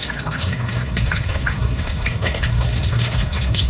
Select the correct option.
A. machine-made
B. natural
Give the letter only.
A